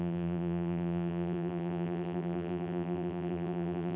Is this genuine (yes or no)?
no